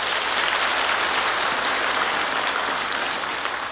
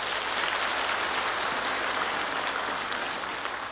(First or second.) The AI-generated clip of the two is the first